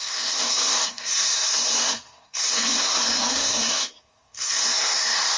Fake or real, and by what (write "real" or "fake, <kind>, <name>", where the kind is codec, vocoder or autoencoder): fake, codec, SNAC